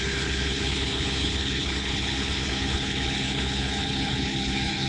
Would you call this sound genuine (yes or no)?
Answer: no